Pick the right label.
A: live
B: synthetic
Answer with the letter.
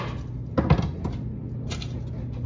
A